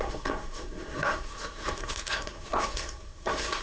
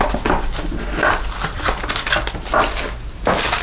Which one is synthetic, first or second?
first